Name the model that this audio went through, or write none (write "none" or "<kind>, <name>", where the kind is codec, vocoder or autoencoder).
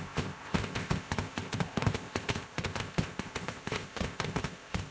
codec, ZipCodec